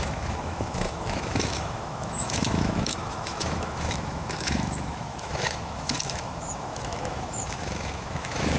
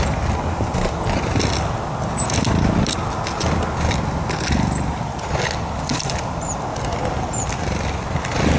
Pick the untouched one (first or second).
second